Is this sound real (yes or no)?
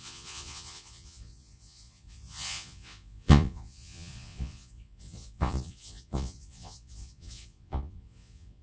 no